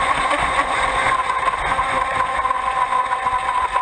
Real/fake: fake